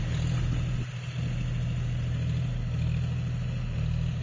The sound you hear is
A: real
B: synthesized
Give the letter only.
A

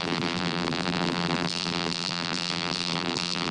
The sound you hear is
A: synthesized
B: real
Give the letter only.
A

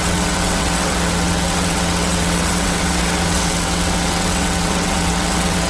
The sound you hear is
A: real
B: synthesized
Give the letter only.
B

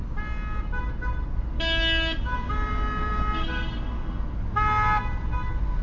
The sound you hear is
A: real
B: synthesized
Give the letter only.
A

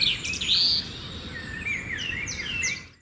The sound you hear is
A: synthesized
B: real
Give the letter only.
B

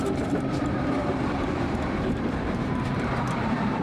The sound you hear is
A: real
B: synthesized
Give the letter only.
B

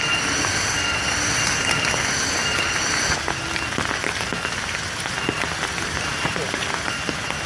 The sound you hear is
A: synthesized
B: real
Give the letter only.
B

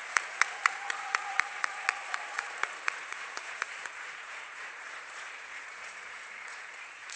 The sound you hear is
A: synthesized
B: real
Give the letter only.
A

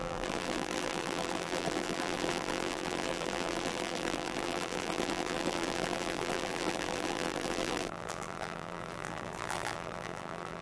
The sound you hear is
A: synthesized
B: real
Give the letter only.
A